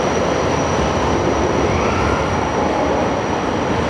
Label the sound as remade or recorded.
recorded